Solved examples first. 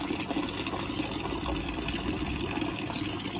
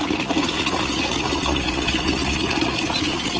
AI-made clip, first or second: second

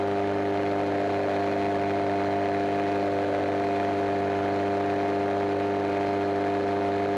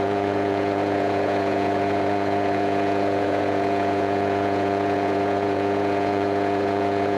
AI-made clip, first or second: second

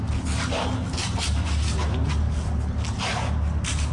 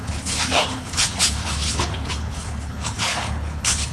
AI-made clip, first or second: second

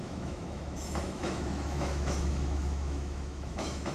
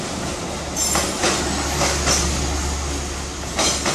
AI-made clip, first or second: first